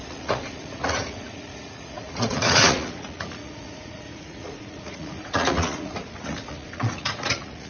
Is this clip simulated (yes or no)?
yes